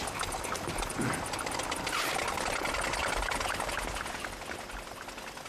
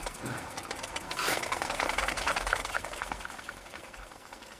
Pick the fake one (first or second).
second